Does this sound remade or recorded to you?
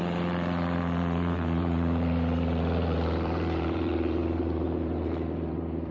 remade